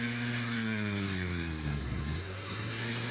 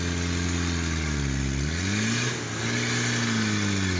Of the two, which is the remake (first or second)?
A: first